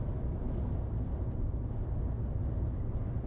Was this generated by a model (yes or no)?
yes